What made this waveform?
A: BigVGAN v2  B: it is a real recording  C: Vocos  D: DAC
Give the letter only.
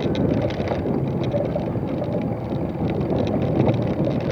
B